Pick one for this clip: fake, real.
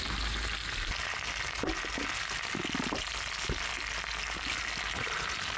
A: real